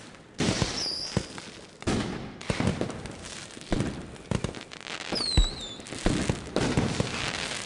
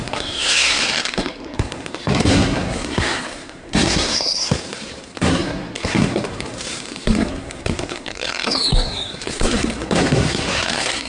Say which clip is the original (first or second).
first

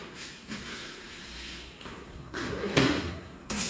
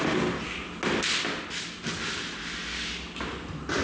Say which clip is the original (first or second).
second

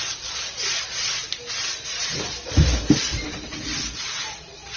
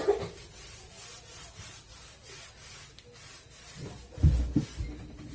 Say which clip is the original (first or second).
second